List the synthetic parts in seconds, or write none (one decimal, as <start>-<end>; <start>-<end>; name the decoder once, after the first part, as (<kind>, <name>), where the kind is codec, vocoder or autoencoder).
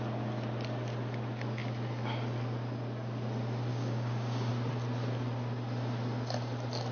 3.7-4.5 (codec, DAC)